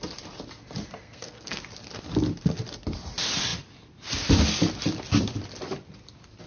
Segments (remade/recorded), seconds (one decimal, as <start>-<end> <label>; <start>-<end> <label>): 0.0-1.0 recorded; 1.0-1.6 remade; 1.6-6.5 recorded